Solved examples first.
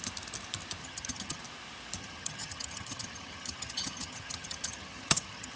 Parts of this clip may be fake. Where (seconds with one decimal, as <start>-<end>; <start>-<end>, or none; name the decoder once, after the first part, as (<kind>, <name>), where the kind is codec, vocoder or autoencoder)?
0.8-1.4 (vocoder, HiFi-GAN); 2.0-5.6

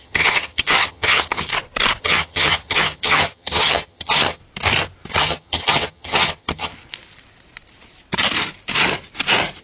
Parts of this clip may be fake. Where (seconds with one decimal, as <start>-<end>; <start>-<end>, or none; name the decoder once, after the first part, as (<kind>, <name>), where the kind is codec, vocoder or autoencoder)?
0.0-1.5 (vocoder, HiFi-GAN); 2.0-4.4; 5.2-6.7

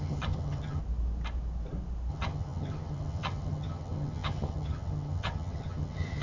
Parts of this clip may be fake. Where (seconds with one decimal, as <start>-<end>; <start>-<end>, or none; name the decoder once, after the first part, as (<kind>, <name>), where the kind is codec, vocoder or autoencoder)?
0.0-0.8 (vocoder, HiFi-GAN); 2.1-6.2

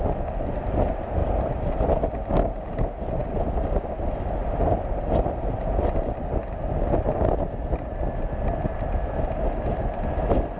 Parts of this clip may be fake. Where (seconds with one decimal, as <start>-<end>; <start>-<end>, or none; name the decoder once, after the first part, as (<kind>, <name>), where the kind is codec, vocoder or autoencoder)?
none